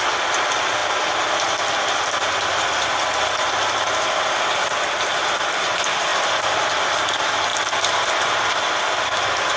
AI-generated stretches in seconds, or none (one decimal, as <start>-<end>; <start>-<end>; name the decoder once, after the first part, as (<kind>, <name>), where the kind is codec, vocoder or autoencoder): 7.5-8.3 (vocoder, BigVGAN v2)